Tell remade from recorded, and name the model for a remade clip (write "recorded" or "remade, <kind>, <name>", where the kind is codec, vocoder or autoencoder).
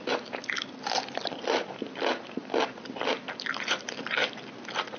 recorded